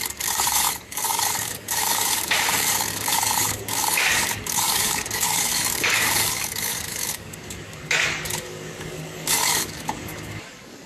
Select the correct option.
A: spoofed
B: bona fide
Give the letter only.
A